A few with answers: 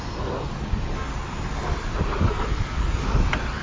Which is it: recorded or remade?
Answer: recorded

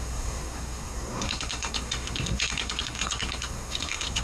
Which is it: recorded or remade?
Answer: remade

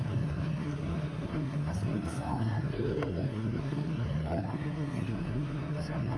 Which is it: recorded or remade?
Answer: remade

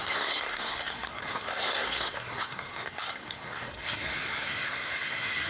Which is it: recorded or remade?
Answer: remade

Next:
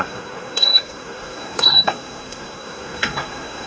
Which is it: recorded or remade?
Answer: remade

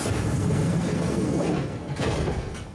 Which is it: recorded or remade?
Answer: remade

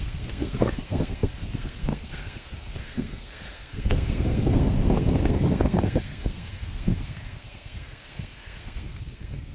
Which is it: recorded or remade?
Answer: remade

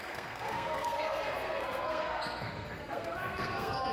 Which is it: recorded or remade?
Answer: remade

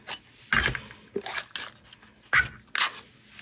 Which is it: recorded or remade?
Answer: recorded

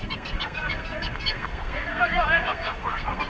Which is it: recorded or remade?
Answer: remade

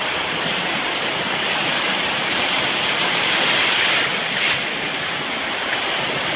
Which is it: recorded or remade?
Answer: recorded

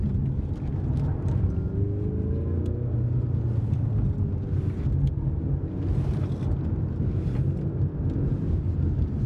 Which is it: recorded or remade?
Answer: recorded